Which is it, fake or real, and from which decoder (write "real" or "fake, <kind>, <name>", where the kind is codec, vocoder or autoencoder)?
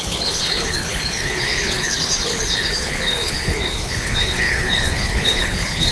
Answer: fake, codec, HILCodec